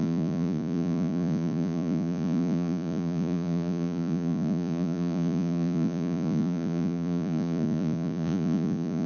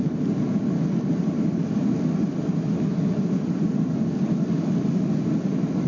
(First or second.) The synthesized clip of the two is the first